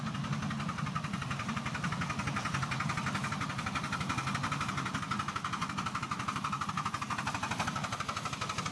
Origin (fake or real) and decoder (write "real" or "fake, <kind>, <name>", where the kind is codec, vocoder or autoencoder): real